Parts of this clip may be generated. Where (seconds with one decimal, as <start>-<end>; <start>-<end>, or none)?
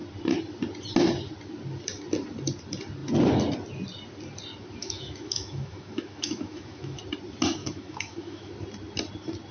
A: 4.8-7.0; 7.6-8.5